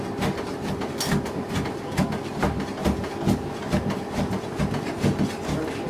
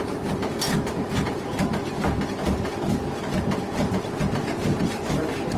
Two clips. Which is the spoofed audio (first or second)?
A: second